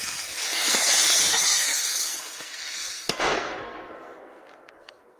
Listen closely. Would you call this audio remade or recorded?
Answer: remade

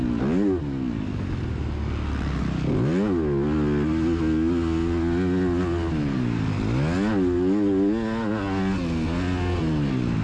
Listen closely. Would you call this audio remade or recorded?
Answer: recorded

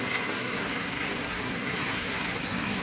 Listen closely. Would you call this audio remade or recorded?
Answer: remade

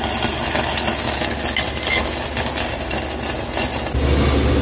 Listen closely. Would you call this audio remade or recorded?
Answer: recorded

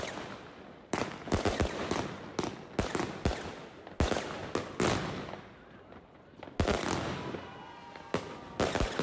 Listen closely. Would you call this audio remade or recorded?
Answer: recorded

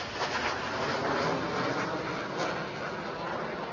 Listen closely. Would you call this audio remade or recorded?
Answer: recorded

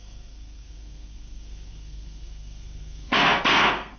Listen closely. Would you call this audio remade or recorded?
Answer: remade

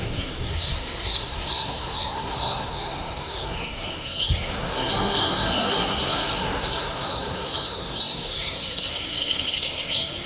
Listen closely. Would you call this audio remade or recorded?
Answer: remade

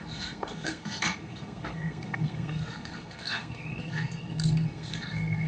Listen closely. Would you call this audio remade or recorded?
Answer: remade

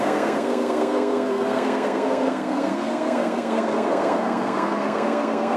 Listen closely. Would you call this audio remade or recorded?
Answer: remade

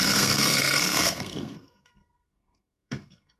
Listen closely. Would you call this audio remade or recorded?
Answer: remade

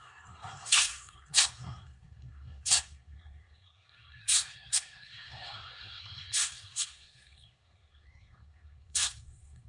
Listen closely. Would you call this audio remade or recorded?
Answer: remade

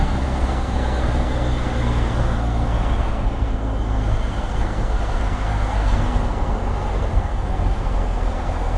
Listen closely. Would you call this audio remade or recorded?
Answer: remade